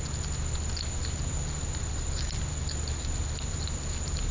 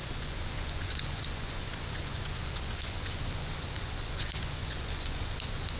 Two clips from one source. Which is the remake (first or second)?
second